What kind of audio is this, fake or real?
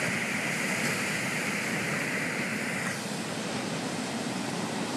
real